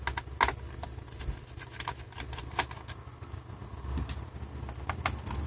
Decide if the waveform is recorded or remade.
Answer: recorded